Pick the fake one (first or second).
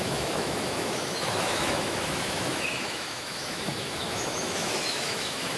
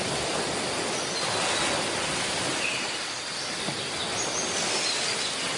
first